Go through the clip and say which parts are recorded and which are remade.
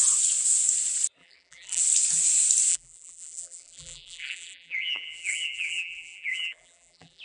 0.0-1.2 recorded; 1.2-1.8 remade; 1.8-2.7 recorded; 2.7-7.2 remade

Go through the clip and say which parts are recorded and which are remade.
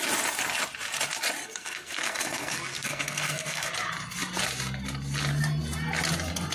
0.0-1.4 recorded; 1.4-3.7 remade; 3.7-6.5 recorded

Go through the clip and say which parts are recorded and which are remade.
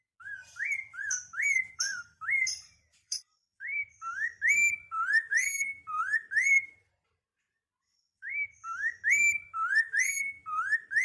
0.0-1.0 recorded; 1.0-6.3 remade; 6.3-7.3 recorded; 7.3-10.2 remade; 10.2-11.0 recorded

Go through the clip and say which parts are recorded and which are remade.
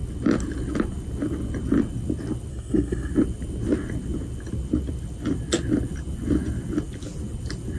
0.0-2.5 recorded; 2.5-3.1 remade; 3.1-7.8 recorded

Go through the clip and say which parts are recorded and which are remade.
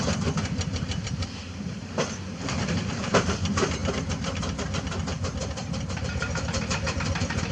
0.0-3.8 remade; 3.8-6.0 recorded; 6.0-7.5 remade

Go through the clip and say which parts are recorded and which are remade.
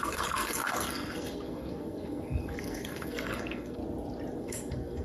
0.0-3.8 remade; 3.8-4.4 recorded; 4.4-5.0 remade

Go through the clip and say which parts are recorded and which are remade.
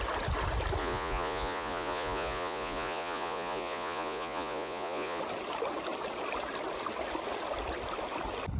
0.0-0.8 recorded; 0.8-5.2 remade; 5.2-8.6 recorded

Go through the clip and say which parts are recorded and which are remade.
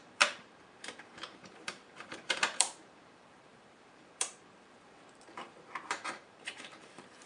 0.0-7.3 remade